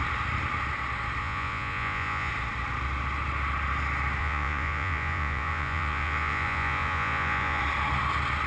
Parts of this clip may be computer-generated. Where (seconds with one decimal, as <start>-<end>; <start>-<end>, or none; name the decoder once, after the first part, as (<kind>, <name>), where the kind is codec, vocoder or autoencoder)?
1.2-2.3 (vocoder, Vocos); 4.2-7.6